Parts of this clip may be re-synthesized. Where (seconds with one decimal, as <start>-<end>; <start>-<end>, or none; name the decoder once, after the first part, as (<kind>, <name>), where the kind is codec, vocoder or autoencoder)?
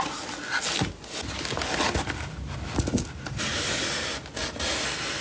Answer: none